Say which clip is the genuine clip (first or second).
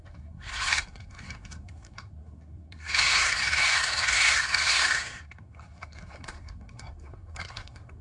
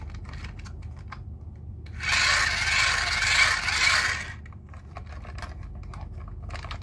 second